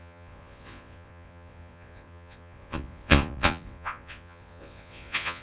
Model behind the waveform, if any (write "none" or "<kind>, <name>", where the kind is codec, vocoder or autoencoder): vocoder, Vocos